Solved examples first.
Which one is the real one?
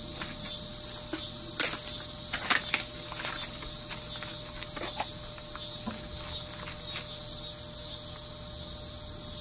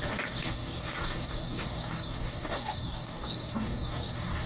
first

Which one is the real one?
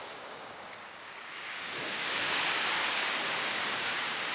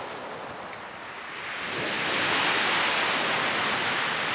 second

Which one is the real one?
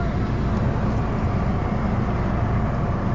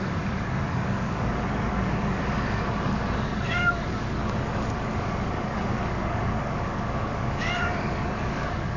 first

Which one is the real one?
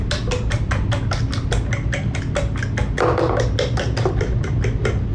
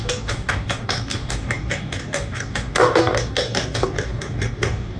first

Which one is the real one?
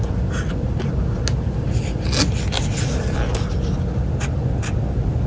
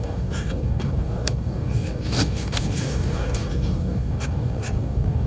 first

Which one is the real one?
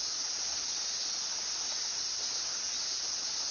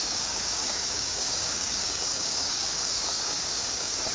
first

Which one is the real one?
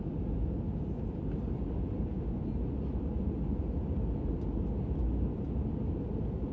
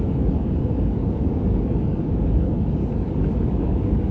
first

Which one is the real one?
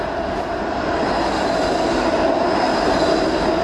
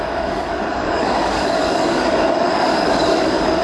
first